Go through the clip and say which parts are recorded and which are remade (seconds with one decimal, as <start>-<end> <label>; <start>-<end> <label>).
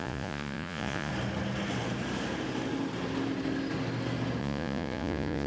0.0-1.1 remade; 1.1-4.4 recorded; 4.4-5.5 remade